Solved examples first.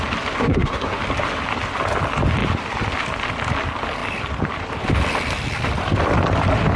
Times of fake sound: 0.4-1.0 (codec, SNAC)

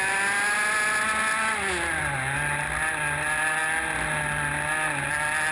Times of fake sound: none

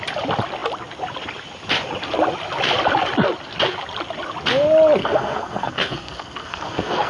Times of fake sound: 5.0-7.1 (codec, SNAC)